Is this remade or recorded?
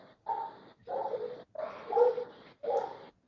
recorded